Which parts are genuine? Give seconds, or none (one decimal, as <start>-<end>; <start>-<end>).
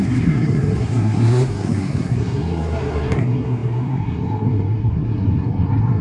none